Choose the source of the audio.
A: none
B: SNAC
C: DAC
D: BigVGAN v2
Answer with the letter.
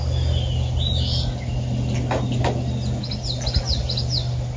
A